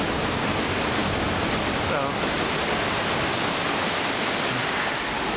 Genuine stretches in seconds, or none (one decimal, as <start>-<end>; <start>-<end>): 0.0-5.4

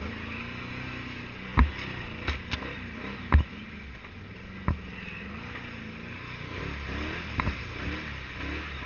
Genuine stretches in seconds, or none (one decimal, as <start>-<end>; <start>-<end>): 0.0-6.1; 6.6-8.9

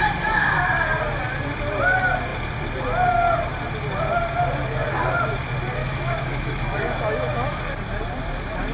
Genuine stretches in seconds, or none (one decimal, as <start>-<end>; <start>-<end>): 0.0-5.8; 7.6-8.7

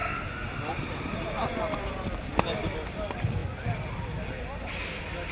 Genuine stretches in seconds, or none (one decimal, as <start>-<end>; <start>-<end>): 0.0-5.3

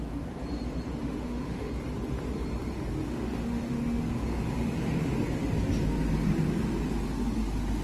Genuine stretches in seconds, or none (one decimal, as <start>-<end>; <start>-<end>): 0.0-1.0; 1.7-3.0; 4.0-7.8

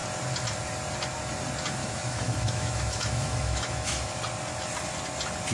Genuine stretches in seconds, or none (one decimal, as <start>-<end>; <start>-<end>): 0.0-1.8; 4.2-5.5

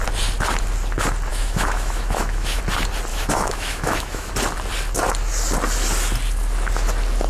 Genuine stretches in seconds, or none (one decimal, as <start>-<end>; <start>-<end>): 0.0-1.3; 2.6-3.1; 4.3-7.3